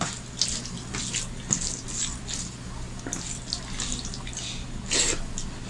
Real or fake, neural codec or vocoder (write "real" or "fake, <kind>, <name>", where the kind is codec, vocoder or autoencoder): real